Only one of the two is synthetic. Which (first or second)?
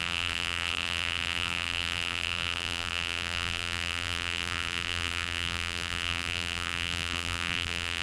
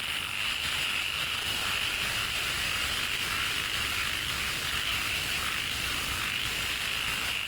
first